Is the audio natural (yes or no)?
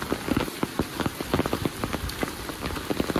yes